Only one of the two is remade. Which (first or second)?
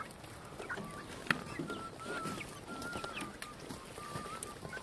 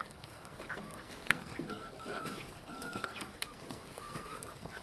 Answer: second